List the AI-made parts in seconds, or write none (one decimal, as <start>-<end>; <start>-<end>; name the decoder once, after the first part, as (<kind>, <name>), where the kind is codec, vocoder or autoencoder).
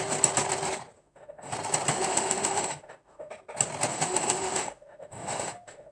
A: 1.0-1.5 (autoencoder, DAC-VAE); 1.9-3.3; 3.9-5.9